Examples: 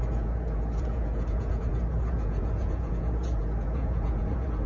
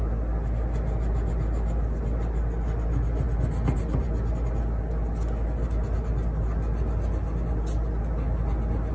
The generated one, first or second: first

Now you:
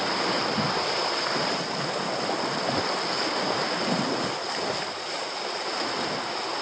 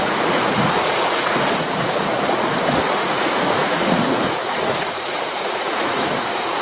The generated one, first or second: second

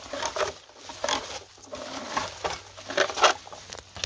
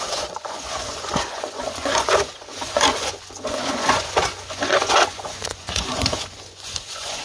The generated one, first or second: second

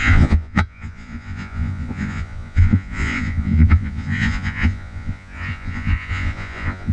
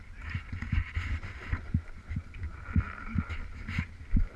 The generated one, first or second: first